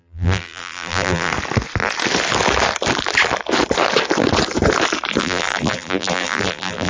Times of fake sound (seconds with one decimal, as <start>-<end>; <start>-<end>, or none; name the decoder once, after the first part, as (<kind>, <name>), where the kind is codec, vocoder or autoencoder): 0.0-1.3 (vocoder, BigVGAN v2); 5.2-6.9